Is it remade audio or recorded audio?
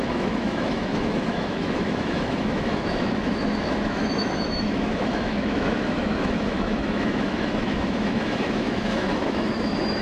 remade